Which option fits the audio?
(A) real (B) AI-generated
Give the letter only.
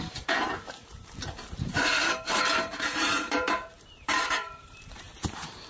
B